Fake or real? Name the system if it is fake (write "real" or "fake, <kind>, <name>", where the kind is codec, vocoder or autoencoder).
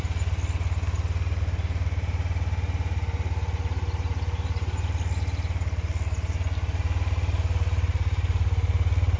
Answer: real